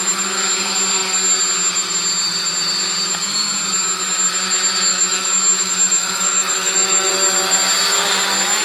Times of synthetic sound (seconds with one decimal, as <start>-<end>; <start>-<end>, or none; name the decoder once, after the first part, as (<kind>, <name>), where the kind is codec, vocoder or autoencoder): 4.9-7.1 (autoencoder, DAC-VAE)